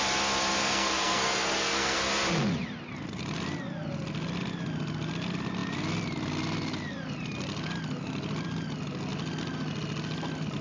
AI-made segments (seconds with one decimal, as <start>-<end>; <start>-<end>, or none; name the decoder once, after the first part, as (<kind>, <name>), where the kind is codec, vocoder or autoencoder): 0.6-2.1 (codec, SNAC)